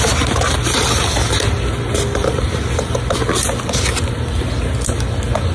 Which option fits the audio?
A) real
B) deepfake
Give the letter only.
A